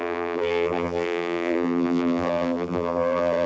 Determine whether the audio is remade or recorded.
remade